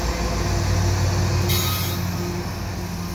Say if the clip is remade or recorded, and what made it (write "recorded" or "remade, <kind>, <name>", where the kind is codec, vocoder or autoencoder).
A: recorded